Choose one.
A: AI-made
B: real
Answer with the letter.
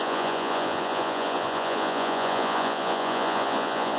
A